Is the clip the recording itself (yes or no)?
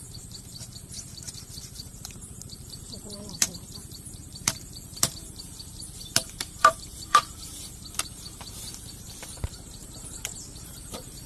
no